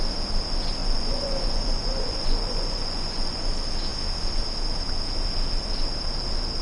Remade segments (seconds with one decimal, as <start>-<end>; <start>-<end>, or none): 0.8-3.5